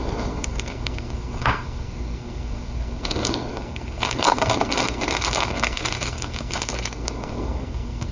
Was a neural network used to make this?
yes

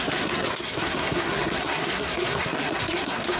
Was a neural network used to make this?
yes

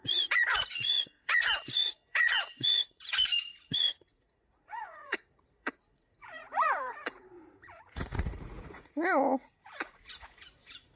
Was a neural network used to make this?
yes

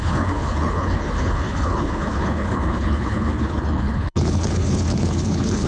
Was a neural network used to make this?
yes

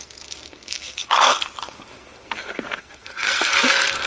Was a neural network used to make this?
yes